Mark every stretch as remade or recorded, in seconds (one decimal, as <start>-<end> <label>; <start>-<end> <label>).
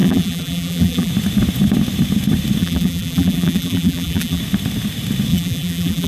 0.0-1.1 remade; 1.1-2.6 recorded; 2.6-4.4 remade; 4.4-5.3 recorded; 5.3-6.1 remade